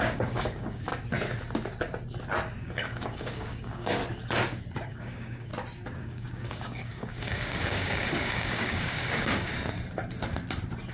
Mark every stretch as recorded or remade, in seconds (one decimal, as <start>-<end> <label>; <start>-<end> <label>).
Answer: 0.0-0.9 remade; 0.9-2.6 recorded; 2.6-4.0 remade; 4.0-4.9 recorded; 4.9-5.5 remade; 5.5-6.0 recorded; 6.0-9.5 remade; 9.5-10.9 recorded

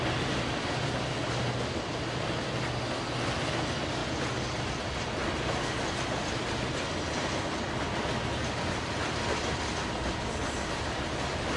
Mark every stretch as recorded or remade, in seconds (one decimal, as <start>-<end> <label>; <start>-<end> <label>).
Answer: 0.0-11.6 recorded

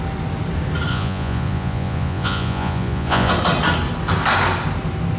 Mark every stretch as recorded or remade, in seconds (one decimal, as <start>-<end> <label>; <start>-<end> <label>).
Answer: 0.0-0.9 recorded; 0.9-3.3 remade; 3.3-5.2 recorded

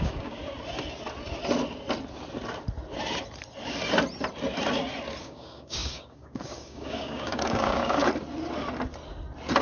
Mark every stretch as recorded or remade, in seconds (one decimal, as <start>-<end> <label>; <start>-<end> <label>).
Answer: 0.0-0.4 remade; 0.4-5.2 recorded; 5.2-8.0 remade; 8.0-9.6 recorded

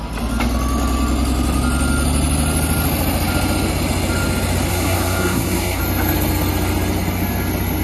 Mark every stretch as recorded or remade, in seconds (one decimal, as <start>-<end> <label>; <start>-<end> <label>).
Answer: 0.0-4.7 recorded; 4.7-5.8 remade; 5.8-7.8 recorded